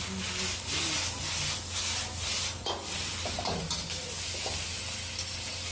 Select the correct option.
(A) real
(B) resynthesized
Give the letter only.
A